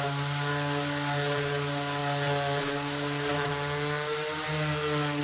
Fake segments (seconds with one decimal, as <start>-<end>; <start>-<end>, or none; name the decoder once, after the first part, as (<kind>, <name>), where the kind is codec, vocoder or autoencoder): none